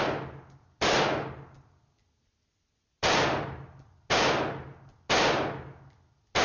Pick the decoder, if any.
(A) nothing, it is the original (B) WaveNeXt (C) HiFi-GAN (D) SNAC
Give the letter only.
A